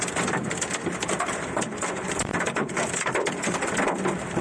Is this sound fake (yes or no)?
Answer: no